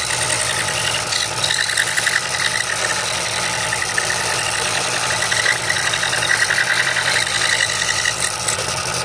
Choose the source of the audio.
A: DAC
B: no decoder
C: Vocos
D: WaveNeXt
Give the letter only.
B